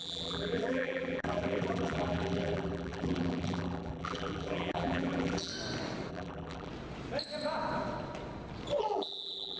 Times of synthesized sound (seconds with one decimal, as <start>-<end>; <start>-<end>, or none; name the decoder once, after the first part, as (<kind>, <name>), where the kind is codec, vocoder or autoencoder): 0.0-5.5 (vocoder, BigVGAN v2); 6.1-6.7; 8.8-9.6